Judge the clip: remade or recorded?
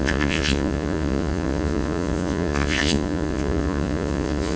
remade